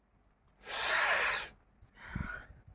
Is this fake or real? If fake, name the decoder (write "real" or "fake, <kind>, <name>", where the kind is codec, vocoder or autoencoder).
real